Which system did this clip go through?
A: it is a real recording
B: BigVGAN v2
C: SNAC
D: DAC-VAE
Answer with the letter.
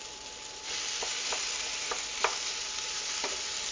B